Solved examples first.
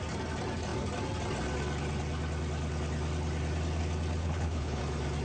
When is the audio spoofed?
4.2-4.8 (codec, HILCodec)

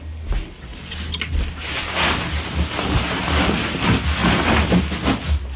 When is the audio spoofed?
none

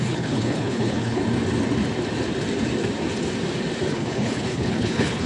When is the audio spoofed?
0.0-1.2 (codec, HILCodec); 3.9-5.3

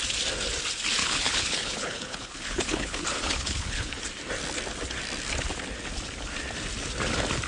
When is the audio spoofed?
1.0-4.0 (codec, HILCodec)

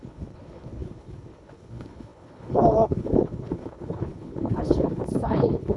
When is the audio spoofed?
0.0-5.8 (codec, HILCodec)

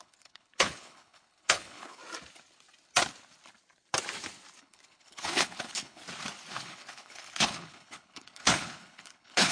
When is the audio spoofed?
0.0-2.0 (codec, HILCodec); 4.6-6.0; 6.5-9.5

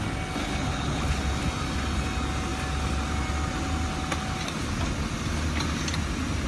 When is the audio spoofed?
0.4-1.2 (codec, HILCodec)

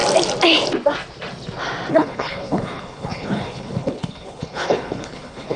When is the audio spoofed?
1.9-5.6 (codec, HILCodec)